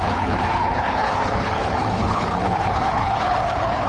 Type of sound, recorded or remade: remade